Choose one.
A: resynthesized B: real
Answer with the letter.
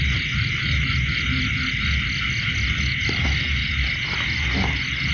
B